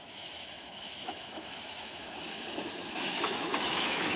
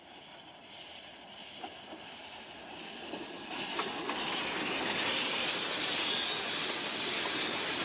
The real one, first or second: second